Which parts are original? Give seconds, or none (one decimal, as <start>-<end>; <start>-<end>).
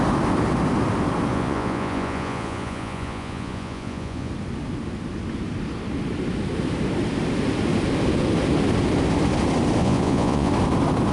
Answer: 0.0-1.3; 4.3-9.8; 10.5-11.1